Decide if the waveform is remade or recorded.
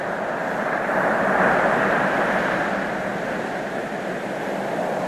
recorded